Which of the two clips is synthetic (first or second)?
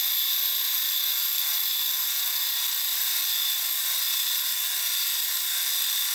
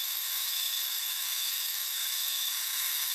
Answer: second